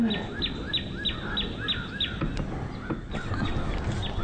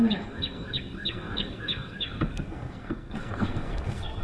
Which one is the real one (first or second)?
first